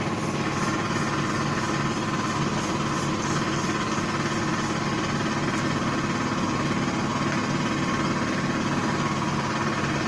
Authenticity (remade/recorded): recorded